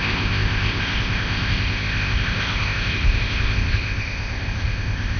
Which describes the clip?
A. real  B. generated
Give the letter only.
B